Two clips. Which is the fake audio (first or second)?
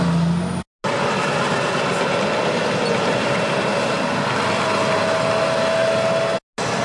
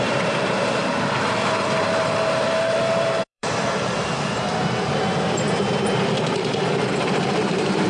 second